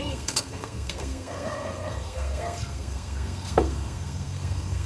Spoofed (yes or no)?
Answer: yes